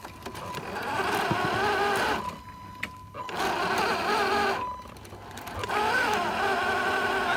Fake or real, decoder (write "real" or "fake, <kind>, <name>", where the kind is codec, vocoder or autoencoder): real